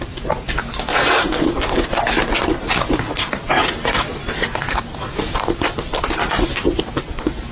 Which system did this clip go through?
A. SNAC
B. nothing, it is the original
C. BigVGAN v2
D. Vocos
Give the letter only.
B